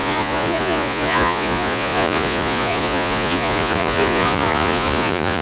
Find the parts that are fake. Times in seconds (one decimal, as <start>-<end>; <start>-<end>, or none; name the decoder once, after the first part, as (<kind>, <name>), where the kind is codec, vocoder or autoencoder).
0.0-5.4 (vocoder, Vocos)